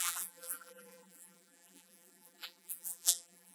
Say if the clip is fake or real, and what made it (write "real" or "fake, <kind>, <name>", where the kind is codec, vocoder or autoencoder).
fake, vocoder, BigVGAN v2